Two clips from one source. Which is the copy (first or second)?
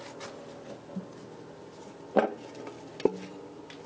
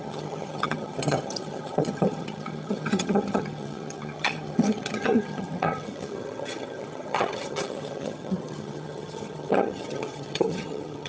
second